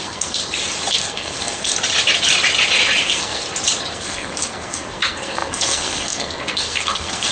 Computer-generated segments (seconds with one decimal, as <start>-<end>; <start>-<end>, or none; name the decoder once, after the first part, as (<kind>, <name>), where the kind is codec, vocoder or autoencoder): 0.0-0.4 (codec, SNAC); 0.9-1.7; 3.0-3.4; 3.9-7.3